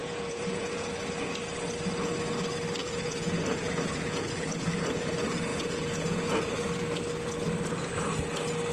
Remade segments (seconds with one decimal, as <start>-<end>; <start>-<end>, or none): 0.0-0.9; 2.8-5.1; 5.5-6.5